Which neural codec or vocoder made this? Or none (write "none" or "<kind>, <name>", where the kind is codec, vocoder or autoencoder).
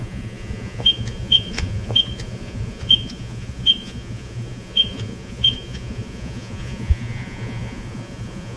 vocoder, Vocos